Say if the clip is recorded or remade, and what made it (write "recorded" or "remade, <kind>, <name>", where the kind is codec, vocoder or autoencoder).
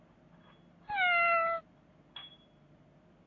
recorded